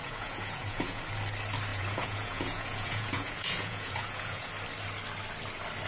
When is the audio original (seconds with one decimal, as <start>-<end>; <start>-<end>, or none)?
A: 1.0-1.7; 4.5-5.9

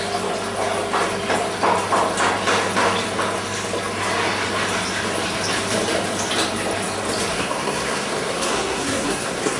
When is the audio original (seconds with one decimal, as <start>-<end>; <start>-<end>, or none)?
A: 0.0-7.3

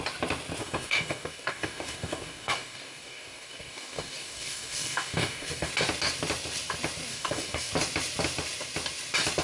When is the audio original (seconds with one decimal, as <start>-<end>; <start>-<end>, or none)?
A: 0.0-0.6; 5.7-7.1; 7.7-9.4